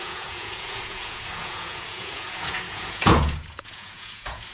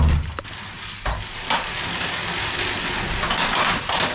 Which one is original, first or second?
second